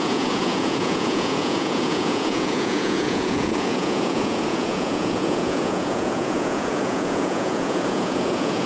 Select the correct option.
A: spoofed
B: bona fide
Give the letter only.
A